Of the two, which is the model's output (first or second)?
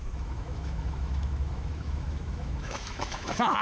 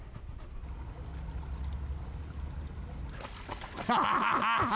first